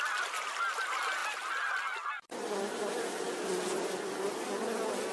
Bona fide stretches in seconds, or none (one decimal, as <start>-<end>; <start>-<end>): 0.0-5.1